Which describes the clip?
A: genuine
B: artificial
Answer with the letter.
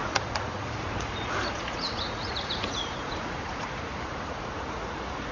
B